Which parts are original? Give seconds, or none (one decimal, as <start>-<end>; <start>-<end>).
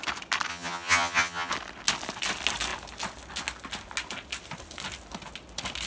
0.0-0.5; 1.5-5.9